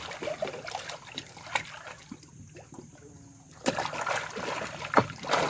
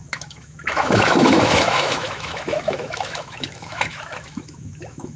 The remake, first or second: second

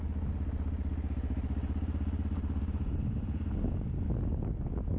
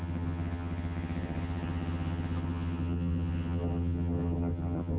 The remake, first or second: second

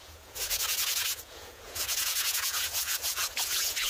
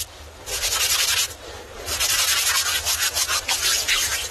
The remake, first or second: first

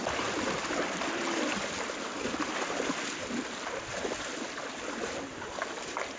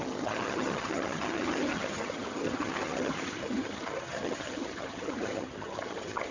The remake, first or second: second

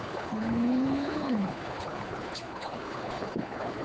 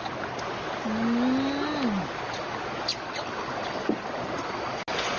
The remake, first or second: first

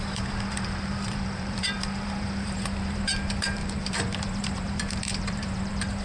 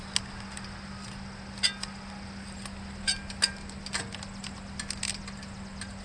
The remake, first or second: first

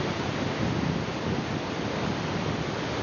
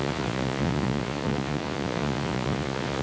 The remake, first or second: second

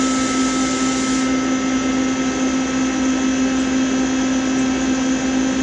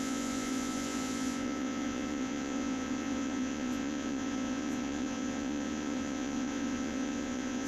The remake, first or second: second